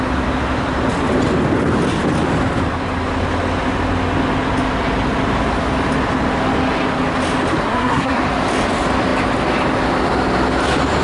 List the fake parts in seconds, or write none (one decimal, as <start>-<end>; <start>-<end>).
7.6-8.2